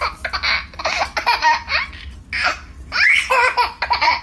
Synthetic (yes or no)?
no